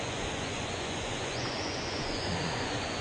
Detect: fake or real fake